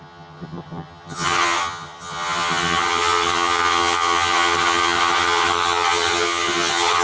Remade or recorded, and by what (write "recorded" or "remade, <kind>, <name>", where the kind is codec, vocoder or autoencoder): remade, vocoder, HiFi-GAN